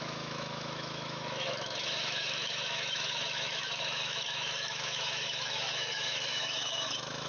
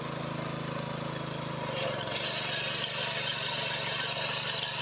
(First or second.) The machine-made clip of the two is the first